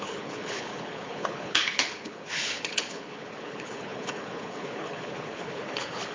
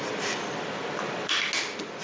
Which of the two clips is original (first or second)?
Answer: second